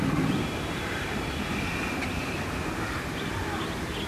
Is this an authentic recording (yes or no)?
no